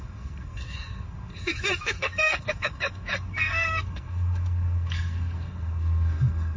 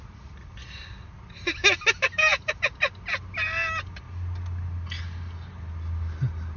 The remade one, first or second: first